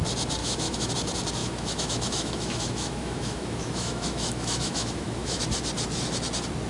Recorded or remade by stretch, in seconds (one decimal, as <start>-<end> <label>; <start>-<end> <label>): 0.0-0.4 recorded; 0.4-0.9 remade; 0.9-1.4 recorded; 1.4-5.4 remade; 5.4-6.7 recorded